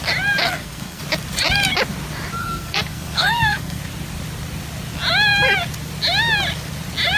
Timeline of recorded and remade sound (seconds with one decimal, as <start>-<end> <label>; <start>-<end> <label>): 0.0-0.4 recorded; 0.4-1.0 remade; 1.0-2.4 recorded; 2.4-3.8 remade; 3.8-7.2 recorded